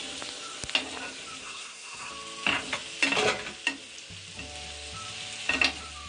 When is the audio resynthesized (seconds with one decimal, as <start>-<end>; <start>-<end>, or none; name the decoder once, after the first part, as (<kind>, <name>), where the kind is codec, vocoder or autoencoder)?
1.4-2.1 (codec, SNAC)